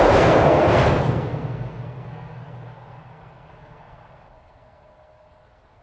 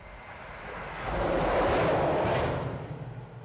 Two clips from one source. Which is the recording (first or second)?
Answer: second